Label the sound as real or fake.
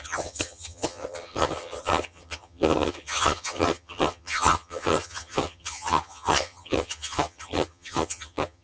fake